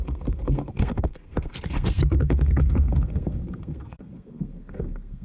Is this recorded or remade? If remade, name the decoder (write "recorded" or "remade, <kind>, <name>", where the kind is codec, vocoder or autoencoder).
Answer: remade, codec, SNAC